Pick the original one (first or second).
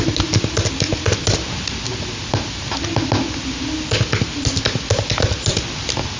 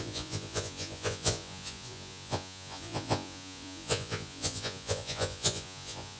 first